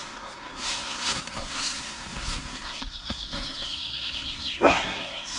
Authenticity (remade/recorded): remade